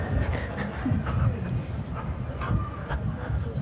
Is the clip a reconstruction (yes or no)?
no